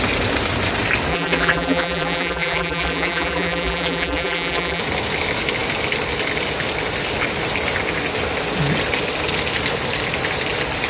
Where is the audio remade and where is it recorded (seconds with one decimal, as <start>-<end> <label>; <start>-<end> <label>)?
0.0-1.1 recorded; 1.1-4.8 remade; 4.8-10.9 recorded